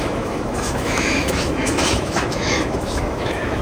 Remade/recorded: remade